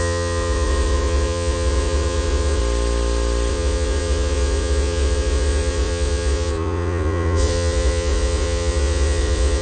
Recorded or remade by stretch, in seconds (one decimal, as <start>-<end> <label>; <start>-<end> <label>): 0.0-2.6 remade; 2.6-3.5 recorded; 3.5-9.6 remade

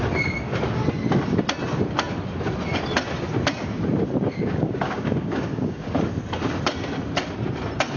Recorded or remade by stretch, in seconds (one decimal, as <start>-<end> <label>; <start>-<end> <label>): 0.0-4.3 recorded; 4.3-5.9 remade; 5.9-8.0 recorded

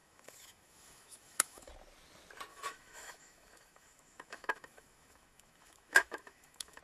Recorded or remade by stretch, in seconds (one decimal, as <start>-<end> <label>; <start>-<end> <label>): 0.0-1.7 remade; 1.7-2.5 recorded; 2.5-6.8 remade

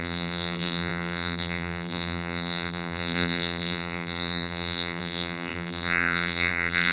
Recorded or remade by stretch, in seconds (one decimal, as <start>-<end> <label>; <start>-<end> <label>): 0.0-6.9 remade

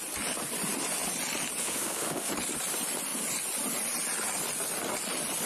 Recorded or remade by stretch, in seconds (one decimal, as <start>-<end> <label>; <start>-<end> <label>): 0.0-1.6 recorded; 1.6-2.3 remade; 2.3-5.5 recorded